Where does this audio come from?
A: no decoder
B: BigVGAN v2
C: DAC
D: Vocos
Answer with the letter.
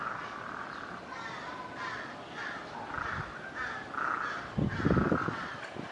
A